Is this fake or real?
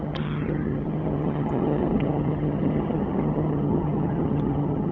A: fake